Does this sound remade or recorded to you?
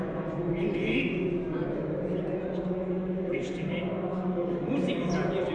recorded